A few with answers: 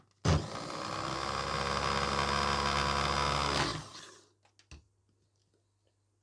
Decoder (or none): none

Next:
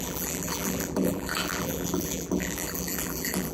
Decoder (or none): vocoder, BigVGAN v2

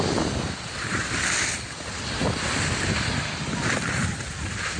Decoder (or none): none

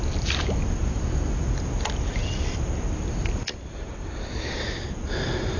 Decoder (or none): none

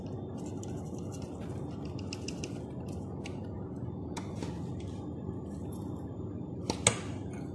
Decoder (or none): none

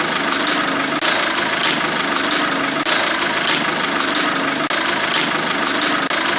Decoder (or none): none